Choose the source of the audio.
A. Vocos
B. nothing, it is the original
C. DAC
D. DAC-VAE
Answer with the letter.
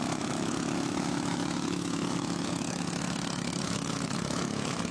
D